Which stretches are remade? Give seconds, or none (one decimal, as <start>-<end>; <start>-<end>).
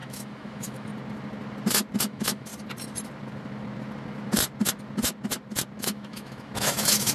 0.0-0.9; 2.0-2.5; 5.8-7.1